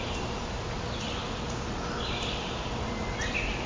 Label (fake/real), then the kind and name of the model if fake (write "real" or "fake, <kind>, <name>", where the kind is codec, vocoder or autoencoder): real